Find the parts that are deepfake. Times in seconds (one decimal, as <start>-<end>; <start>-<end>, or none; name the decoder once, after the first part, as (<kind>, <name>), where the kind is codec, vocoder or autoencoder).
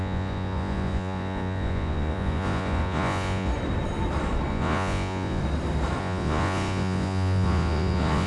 0.0-3.5 (vocoder, Vocos); 4.5-5.4; 6.0-8.3